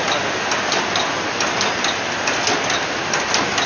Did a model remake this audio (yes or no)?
no